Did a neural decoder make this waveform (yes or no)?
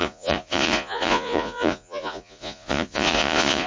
yes